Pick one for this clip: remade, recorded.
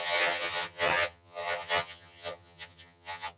remade